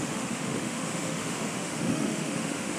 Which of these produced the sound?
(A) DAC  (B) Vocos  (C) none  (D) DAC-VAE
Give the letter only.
D